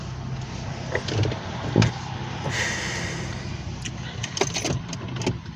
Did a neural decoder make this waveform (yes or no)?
no